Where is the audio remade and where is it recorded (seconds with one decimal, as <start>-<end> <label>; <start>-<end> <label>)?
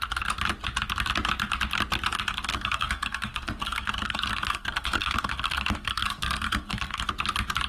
0.0-2.5 recorded; 2.5-7.1 remade; 7.1-7.7 recorded